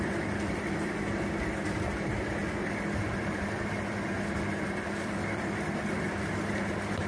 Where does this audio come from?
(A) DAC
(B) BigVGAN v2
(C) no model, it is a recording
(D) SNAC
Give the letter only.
C